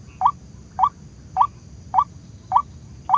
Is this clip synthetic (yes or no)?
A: no